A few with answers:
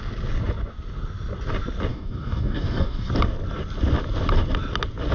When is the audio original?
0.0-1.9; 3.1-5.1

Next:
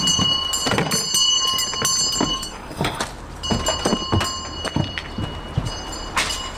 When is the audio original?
0.0-2.3; 3.0-6.6

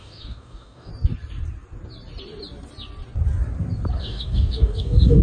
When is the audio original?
0.9-4.0

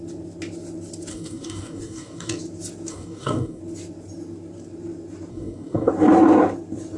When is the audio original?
0.0-1.1; 2.4-2.9; 3.6-5.3; 5.9-7.0

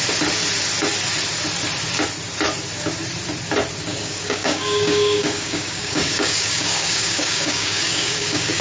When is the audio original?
0.0-3.9

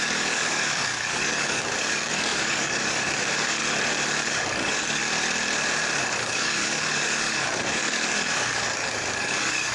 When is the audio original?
3.6-4.3; 5.0-6.0

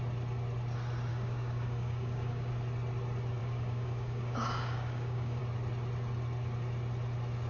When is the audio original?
0.0-1.1; 2.5-3.4; 5.4-7.5

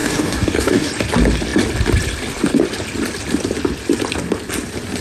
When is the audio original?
0.9-5.0